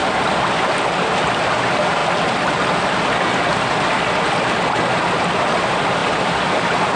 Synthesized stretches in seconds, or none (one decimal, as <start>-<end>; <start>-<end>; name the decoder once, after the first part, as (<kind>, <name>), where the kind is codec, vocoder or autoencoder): none